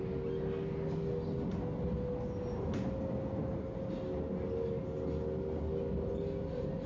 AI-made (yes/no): no